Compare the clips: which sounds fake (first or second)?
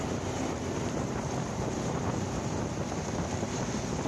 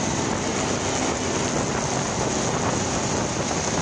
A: first